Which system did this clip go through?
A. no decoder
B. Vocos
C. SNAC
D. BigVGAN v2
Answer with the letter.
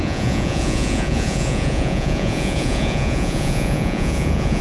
B